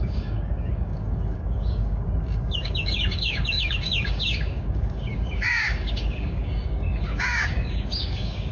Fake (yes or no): yes